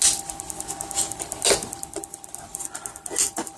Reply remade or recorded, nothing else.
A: recorded